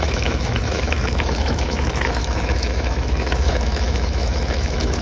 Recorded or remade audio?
remade